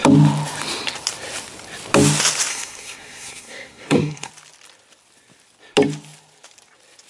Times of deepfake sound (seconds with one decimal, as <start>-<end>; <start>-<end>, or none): 2.5-4.3